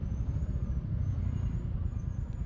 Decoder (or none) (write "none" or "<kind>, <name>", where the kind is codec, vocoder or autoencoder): vocoder, BigVGAN v2